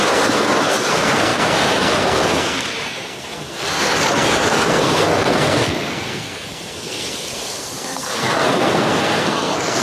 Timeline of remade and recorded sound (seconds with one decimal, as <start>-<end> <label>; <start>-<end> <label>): 0.0-9.8 remade